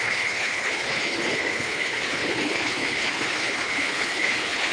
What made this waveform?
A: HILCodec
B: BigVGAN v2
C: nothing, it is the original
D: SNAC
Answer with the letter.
A